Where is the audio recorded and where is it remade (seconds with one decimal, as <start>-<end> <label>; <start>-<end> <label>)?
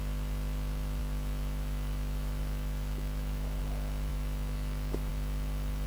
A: 0.0-1.0 recorded; 1.0-3.6 remade; 3.6-4.1 recorded; 4.1-5.1 remade; 5.1-5.9 recorded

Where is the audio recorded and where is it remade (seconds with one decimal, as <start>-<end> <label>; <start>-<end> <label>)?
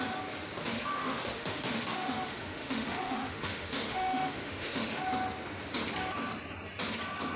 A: 0.0-0.6 recorded; 0.6-5.0 remade; 5.0-7.4 recorded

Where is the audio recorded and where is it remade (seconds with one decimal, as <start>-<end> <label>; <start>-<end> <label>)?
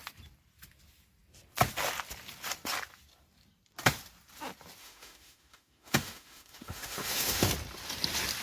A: 0.0-4.8 recorded; 4.8-7.5 remade; 7.5-8.4 recorded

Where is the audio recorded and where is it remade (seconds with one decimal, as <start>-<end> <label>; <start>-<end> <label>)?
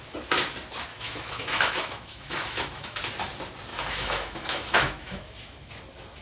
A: 0.0-0.9 recorded; 0.9-3.0 remade; 3.0-3.7 recorded; 3.7-5.7 remade; 5.7-6.2 recorded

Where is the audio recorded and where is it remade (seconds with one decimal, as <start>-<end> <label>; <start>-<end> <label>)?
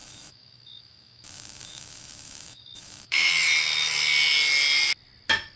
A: 0.0-3.3 remade; 3.3-5.6 recorded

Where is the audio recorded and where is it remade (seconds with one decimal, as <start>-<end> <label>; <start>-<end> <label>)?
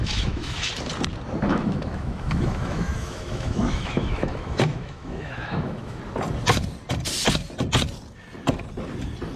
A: 0.0-0.7 remade; 0.7-1.5 recorded; 1.5-6.0 remade; 6.0-9.4 recorded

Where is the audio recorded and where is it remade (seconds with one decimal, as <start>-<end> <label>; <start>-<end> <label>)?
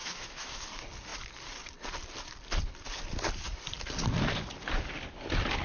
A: 0.0-0.6 remade; 0.6-5.6 recorded